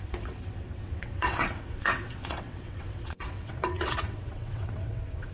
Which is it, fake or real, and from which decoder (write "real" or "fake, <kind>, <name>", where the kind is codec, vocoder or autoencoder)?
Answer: fake, vocoder, WaveNeXt